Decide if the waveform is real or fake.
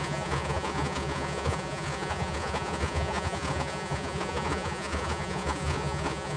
fake